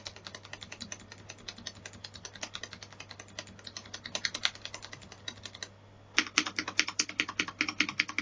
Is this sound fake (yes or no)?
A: no